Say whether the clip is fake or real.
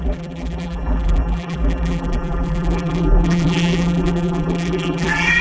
fake